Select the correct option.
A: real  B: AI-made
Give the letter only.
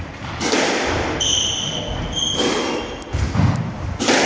A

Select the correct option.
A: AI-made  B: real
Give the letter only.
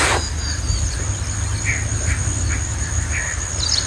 B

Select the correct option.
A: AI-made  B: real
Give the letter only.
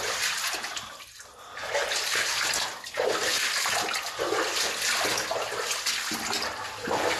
B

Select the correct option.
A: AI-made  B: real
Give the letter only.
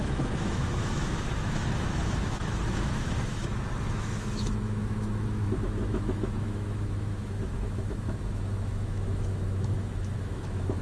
A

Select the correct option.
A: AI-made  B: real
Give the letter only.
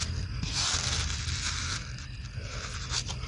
B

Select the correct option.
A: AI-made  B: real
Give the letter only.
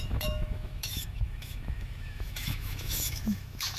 A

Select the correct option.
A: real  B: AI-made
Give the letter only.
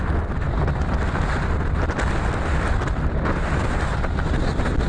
A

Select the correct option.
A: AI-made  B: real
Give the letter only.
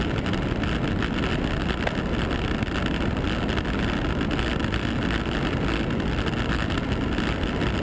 B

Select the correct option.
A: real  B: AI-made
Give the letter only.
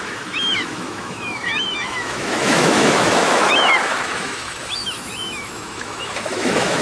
B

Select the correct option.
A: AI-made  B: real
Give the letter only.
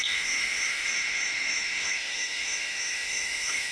A